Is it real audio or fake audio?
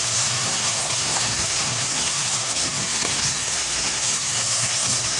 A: fake